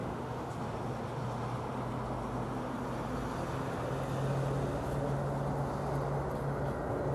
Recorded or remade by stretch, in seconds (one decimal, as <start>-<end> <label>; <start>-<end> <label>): 0.0-0.5 remade; 0.5-7.1 recorded